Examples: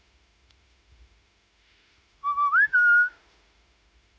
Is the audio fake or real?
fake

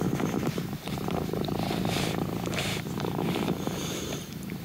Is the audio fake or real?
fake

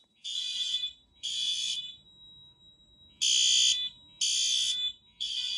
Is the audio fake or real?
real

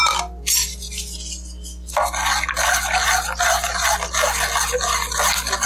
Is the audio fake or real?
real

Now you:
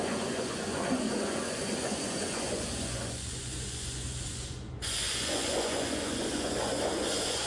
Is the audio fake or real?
fake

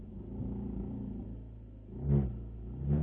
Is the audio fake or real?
real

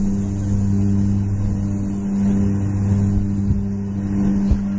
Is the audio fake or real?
real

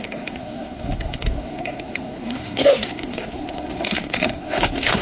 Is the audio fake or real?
fake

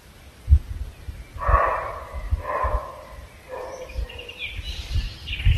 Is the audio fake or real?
fake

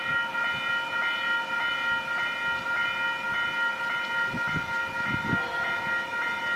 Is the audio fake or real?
real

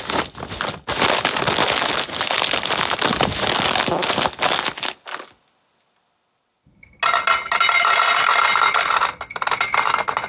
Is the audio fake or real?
real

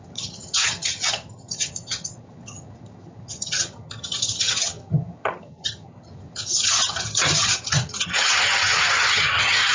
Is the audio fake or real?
fake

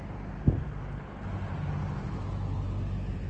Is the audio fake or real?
real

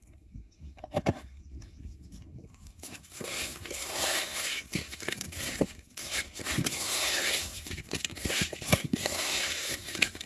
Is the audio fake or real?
fake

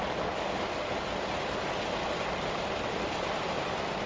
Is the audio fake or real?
real